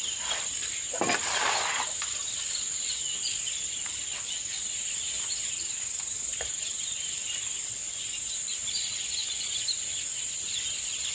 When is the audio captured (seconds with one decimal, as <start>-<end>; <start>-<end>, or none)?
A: 0.0-0.9; 1.5-11.1